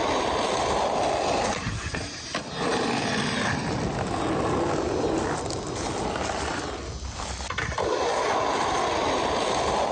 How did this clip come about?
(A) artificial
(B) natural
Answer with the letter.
B